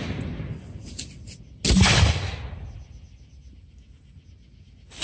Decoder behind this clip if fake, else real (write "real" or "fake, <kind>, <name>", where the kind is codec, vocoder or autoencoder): real